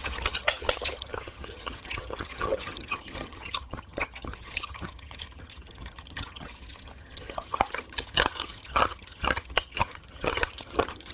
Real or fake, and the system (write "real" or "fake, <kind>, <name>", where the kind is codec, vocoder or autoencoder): fake, vocoder, HiFi-GAN